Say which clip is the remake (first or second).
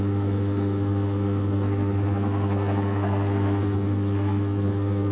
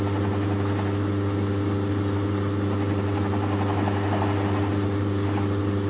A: first